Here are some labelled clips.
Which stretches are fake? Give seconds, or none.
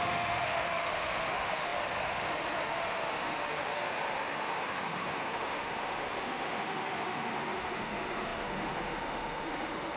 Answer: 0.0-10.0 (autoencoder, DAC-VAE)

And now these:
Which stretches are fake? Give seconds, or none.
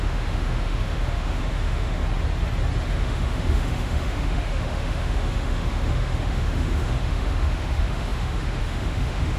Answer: 0.0-2.0 (autoencoder, DAC-VAE); 2.9-9.4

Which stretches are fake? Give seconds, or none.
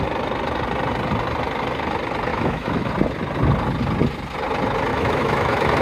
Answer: 2.3-2.9 (autoencoder, DAC-VAE); 4.9-5.8